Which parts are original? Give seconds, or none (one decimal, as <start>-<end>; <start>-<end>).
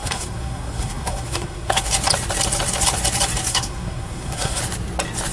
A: 1.9-3.5; 4.6-5.3